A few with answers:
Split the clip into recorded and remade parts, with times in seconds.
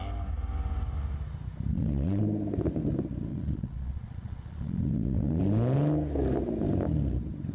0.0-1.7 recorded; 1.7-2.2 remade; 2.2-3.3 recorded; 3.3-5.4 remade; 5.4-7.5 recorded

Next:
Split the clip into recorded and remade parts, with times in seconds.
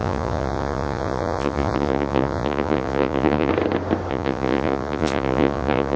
0.0-3.5 remade; 3.5-4.1 recorded; 4.1-6.0 remade